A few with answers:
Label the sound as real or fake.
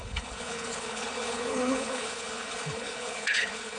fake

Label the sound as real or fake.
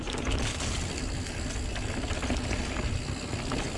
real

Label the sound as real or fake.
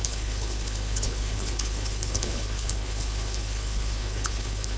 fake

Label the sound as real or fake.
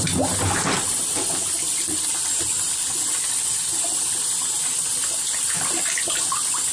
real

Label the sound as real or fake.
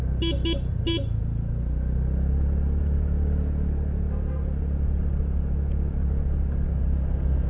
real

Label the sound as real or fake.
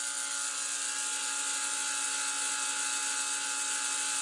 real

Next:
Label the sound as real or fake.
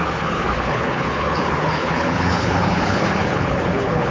fake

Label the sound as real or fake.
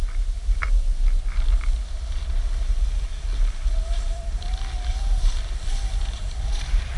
real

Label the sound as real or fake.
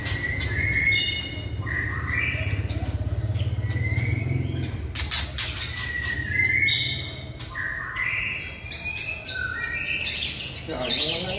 real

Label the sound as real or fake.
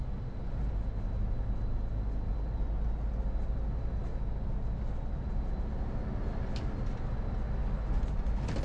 real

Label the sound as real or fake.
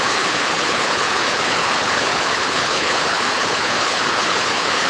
fake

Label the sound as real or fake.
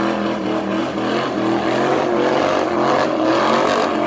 real